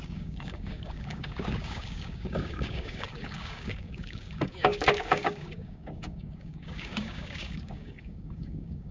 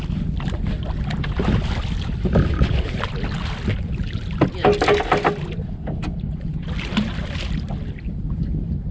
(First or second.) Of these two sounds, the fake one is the first